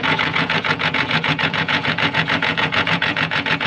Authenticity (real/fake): fake